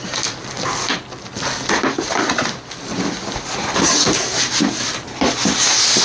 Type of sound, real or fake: real